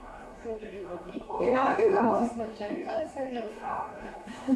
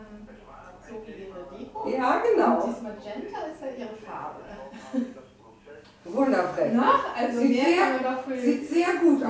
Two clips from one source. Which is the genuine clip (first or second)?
second